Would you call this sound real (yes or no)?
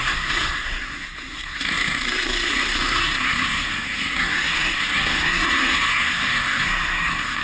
no